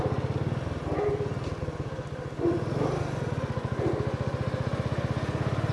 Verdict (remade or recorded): recorded